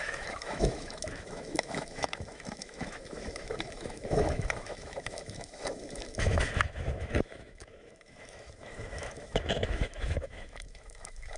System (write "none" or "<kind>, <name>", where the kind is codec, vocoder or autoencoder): autoencoder, DAC-VAE